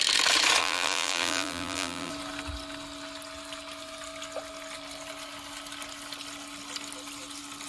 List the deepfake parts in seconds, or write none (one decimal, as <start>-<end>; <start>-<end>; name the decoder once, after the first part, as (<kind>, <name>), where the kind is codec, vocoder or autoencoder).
0.6-2.1 (vocoder, BigVGAN v2)